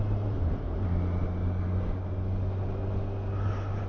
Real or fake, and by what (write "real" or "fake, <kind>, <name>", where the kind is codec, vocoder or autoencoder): real